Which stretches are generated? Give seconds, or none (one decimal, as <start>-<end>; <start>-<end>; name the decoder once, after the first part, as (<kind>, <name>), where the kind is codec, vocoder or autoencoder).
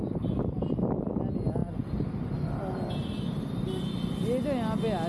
none